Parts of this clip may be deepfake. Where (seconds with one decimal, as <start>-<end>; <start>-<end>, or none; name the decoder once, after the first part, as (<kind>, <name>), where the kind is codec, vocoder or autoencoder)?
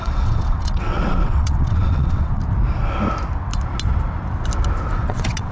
0.0-2.4 (vocoder, WaveNeXt); 4.9-5.5